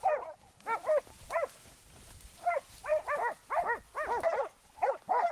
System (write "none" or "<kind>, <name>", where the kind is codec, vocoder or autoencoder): none